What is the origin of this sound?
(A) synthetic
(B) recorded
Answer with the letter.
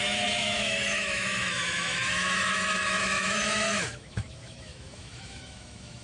A